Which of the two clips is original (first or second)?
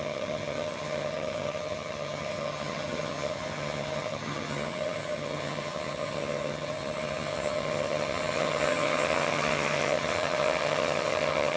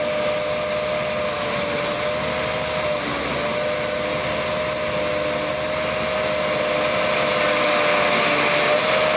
second